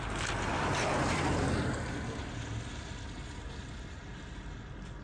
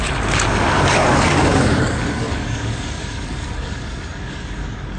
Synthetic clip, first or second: second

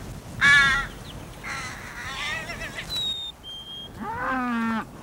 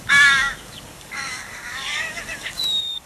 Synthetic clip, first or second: second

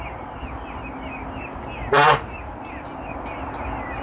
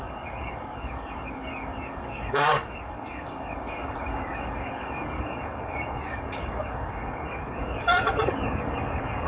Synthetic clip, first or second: second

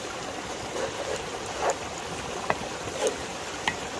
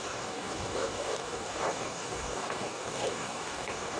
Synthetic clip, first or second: second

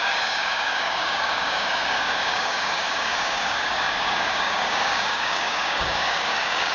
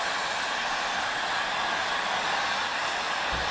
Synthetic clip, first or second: first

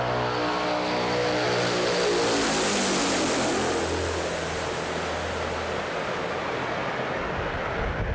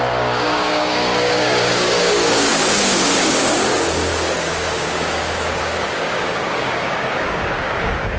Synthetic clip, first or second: second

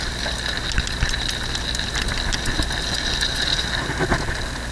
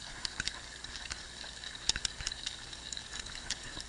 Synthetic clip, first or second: second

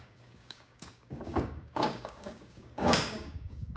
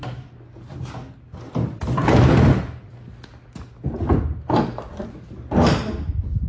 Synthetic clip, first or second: first